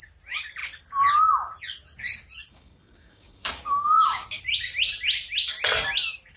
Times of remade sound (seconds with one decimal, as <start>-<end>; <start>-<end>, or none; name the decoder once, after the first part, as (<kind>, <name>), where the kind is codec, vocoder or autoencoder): 2.5-4.4 (codec, DAC)